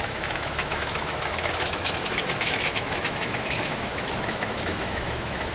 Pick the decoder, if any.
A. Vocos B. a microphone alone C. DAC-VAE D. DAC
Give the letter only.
C